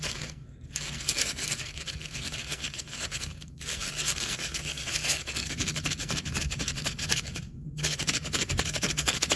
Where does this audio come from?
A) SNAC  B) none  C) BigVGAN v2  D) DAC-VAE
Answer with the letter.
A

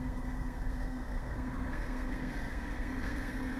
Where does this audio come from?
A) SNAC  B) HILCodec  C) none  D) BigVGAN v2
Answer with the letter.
A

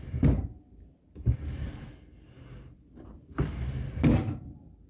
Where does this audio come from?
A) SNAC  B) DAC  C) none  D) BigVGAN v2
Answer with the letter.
C